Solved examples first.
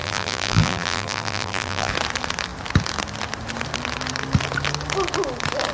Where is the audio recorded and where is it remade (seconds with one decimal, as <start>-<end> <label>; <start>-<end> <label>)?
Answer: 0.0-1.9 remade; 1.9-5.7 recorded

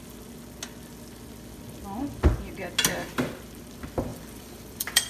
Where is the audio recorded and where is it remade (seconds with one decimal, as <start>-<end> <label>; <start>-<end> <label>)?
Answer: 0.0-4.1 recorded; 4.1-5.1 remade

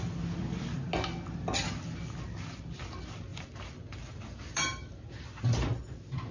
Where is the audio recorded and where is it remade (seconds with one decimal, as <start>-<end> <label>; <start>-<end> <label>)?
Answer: 0.0-3.3 recorded; 3.3-5.8 remade; 5.8-6.3 recorded

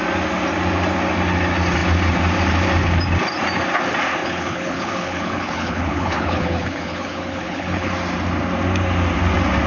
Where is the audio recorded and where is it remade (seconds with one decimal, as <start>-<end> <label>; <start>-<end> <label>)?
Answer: 0.0-4.2 recorded; 4.2-7.9 remade; 7.9-9.7 recorded

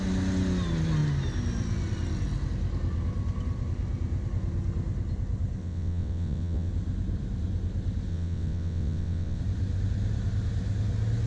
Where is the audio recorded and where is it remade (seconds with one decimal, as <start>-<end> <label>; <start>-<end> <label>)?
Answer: 0.0-5.6 recorded; 5.6-6.7 remade; 6.7-8.1 recorded; 8.1-9.4 remade; 9.4-11.3 recorded